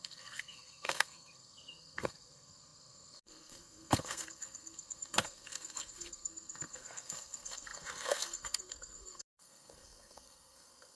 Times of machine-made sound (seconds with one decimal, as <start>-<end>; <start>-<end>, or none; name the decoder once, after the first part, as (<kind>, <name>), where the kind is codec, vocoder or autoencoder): 0.0-11.0 (codec, SNAC)